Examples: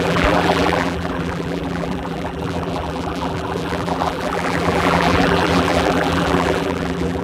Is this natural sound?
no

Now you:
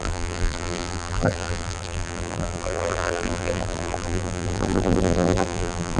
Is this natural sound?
no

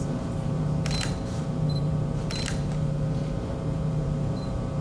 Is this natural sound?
no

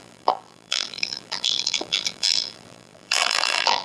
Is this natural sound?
no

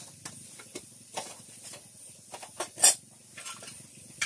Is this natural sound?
yes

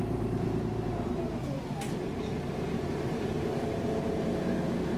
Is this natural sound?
no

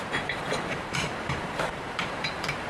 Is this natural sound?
no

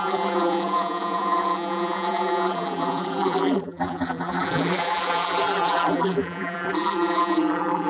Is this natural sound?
no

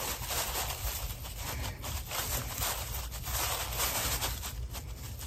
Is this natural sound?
yes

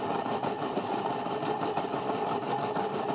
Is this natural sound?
yes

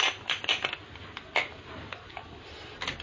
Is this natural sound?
yes